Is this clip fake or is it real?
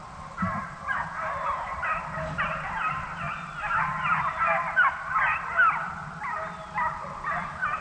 real